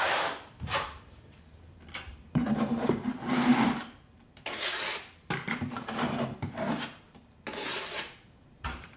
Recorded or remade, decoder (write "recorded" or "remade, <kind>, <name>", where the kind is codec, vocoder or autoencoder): remade, vocoder, BigVGAN v2